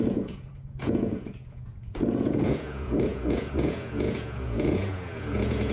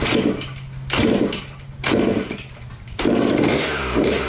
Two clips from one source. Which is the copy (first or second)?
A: first